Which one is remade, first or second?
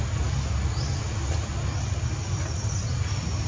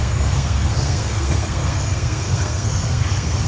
second